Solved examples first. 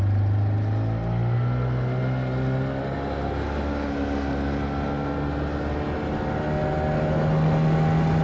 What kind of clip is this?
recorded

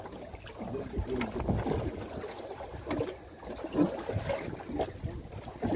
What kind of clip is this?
recorded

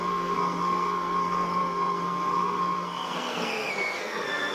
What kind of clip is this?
remade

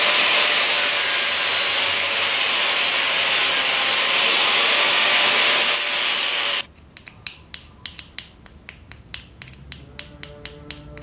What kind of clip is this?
recorded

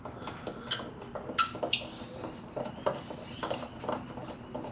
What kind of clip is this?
recorded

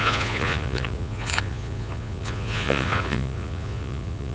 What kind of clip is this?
remade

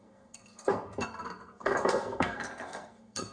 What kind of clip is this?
remade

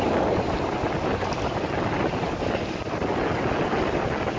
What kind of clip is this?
recorded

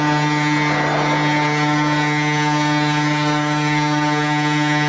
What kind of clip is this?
recorded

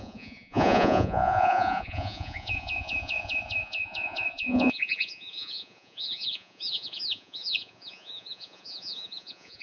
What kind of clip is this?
remade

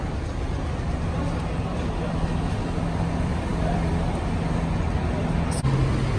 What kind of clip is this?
recorded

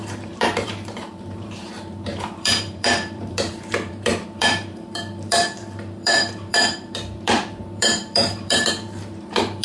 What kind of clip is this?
remade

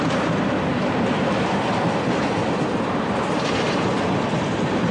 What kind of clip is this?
remade